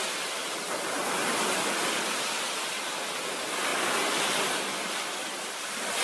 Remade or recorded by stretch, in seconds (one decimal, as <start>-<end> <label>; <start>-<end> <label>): 0.0-0.4 remade; 0.4-2.7 recorded; 2.7-3.7 remade; 3.7-4.2 recorded; 4.2-6.0 remade